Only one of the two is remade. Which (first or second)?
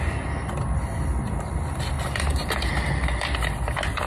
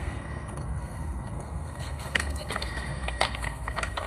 second